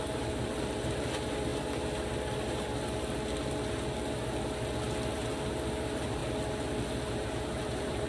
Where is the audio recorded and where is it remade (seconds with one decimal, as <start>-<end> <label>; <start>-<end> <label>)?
0.0-1.5 remade; 1.5-5.5 recorded; 5.5-6.2 remade; 6.2-7.1 recorded; 7.1-8.1 remade